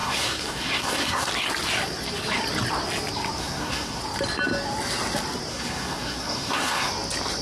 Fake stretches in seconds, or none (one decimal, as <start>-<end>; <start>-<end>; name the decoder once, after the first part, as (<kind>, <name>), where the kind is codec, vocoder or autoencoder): 0.0-1.3 (codec, SNAC); 3.4-4.0; 5.5-6.9